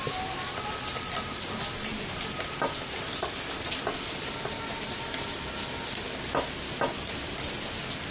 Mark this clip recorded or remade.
recorded